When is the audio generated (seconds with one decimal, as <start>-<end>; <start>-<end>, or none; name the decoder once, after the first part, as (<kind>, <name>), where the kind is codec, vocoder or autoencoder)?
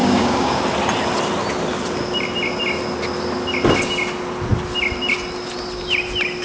0.0-0.6 (codec, DAC)